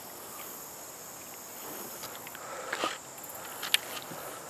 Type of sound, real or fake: real